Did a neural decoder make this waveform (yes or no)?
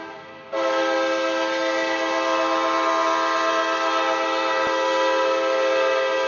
no